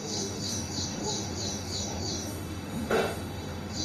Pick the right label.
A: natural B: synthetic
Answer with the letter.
B